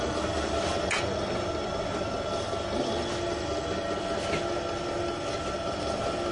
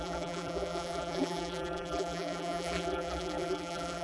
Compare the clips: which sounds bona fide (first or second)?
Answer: first